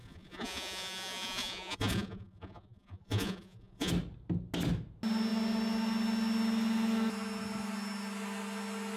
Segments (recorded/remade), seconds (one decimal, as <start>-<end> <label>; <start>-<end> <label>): 0.0-3.9 remade; 3.9-9.0 recorded